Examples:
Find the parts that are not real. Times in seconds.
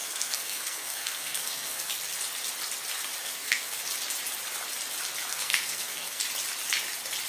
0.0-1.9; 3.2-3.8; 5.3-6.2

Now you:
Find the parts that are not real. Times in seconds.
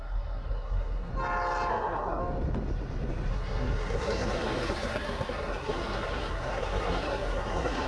0.0-1.1; 1.7-2.2; 3.3-7.9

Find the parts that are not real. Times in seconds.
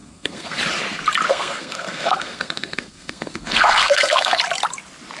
0.0-0.6; 1.3-4.4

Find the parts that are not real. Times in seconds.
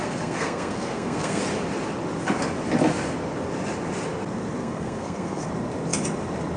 0.0-1.4; 4.6-5.5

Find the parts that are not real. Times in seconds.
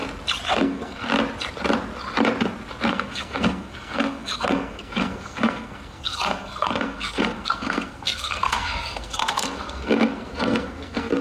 0.5-1.1; 2.9-11.2